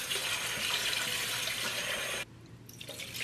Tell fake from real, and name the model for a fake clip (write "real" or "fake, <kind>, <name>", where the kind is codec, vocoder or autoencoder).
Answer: fake, vocoder, BigVGAN v2